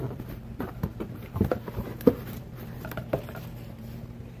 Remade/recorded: remade